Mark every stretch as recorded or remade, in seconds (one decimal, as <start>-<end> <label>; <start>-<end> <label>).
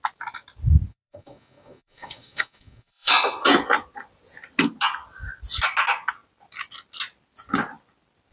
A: 0.0-0.9 recorded; 0.9-3.1 remade; 3.1-8.3 recorded